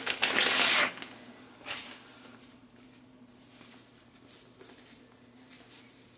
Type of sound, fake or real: real